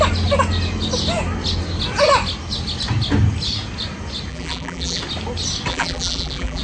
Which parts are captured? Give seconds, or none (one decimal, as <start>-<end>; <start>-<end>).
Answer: 0.0-4.3; 5.0-5.7